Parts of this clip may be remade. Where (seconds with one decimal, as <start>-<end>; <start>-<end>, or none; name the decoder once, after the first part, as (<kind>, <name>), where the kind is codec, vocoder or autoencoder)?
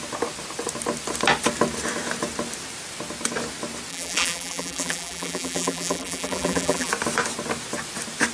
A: 3.9-6.9 (vocoder, BigVGAN v2)